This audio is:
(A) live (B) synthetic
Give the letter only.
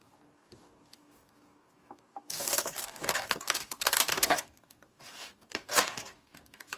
B